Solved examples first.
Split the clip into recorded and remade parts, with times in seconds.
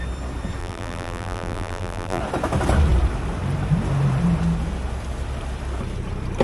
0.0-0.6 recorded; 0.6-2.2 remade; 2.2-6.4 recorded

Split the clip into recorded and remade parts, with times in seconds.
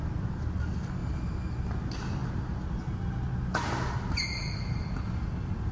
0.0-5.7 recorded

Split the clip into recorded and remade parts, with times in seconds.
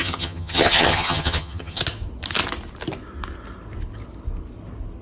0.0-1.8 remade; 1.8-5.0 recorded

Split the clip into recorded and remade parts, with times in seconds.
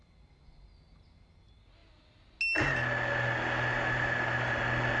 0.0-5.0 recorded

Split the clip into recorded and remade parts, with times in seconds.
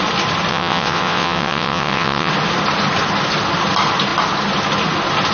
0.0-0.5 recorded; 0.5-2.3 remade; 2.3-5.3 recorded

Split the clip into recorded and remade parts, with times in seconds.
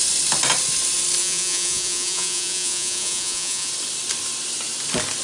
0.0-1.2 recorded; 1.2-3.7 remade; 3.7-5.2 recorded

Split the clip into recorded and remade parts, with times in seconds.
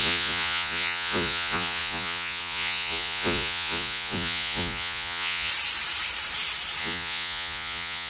0.0-5.5 remade; 5.5-6.8 recorded; 6.8-8.1 remade